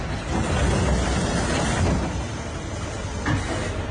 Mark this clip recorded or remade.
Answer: recorded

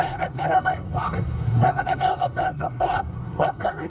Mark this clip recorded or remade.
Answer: remade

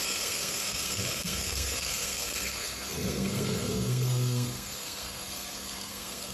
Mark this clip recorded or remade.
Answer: remade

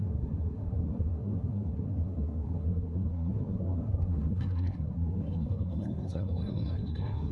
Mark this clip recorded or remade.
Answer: remade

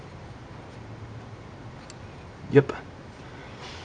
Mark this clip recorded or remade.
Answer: recorded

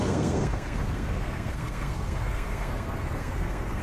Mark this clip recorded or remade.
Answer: remade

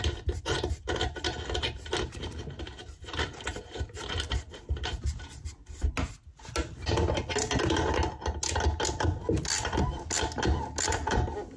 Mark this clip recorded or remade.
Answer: recorded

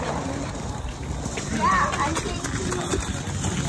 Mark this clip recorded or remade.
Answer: recorded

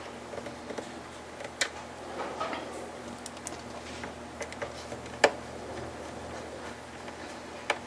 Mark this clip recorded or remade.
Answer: recorded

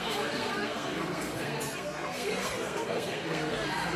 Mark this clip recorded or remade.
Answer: remade